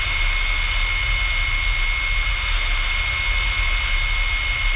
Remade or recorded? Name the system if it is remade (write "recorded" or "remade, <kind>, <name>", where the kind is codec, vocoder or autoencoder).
recorded